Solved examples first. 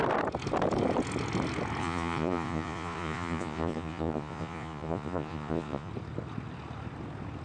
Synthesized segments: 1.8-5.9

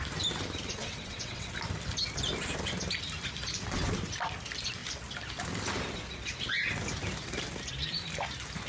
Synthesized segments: 0.8-1.5

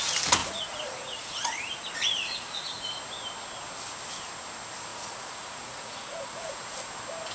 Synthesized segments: 0.4-3.0; 4.9-6.5

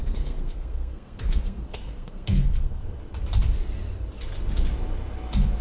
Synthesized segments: 0.0-3.0

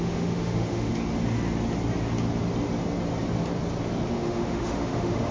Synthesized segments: 0.0-0.9; 4.1-5.3

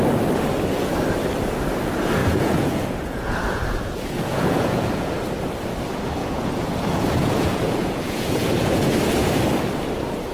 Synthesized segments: 2.2-5.1; 6.2-8.9

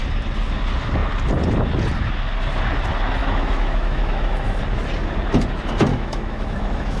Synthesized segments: 3.2-4.6; 5.9-7.0

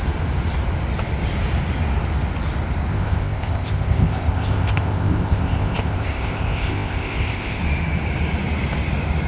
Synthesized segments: 2.9-7.6